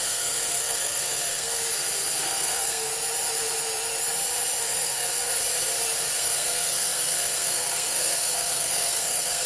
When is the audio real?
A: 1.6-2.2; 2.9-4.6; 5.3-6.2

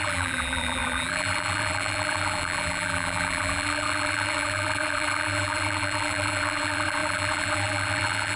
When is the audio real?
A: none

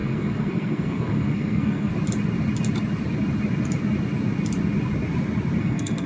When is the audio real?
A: 1.9-5.6